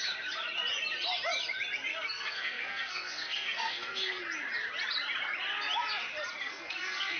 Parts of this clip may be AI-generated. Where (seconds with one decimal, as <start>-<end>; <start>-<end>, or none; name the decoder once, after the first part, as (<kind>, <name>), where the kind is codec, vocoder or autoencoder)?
1.9-4.2 (codec, SNAC); 6.4-7.2